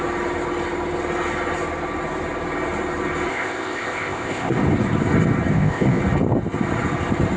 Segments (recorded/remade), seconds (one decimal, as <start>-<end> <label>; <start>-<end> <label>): 0.0-3.3 recorded; 3.3-4.6 remade; 4.6-5.5 recorded; 5.5-6.0 remade; 6.0-7.4 recorded